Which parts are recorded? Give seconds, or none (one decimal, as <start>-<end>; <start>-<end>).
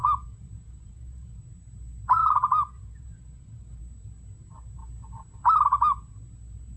1.4-2.2; 3.8-6.8